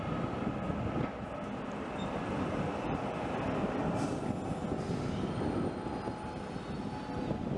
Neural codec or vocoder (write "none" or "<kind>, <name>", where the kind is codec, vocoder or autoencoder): none